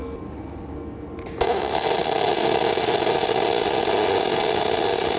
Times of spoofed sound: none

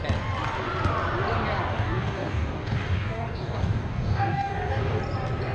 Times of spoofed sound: 1.7-5.0 (codec, DAC)